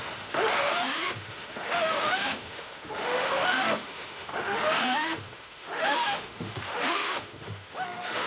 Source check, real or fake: fake